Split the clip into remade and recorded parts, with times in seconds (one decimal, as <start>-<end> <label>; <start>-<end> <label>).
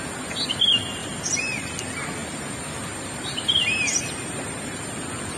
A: 0.0-1.0 recorded; 1.0-1.7 remade; 1.7-2.2 recorded; 2.2-4.8 remade; 4.8-5.4 recorded